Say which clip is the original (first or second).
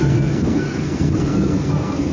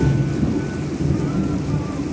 second